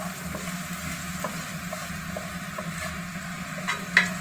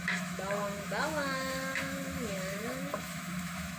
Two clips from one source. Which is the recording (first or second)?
first